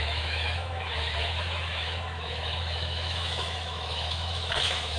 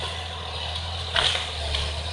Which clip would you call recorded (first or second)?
second